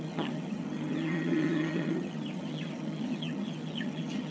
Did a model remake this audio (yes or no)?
yes